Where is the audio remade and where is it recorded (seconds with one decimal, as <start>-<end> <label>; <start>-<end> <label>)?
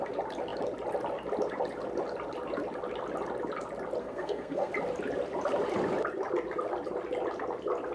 0.0-4.0 recorded; 4.0-4.7 remade; 4.7-7.9 recorded